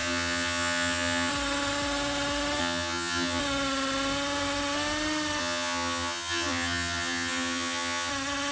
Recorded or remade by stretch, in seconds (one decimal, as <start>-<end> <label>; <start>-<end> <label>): 0.0-1.3 remade; 1.3-2.6 recorded; 2.6-3.4 remade; 3.4-5.4 recorded; 5.4-8.1 remade; 8.1-8.5 recorded